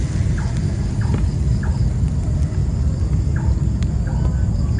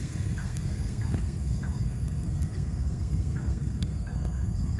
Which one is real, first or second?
first